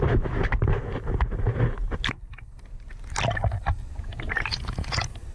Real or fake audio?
real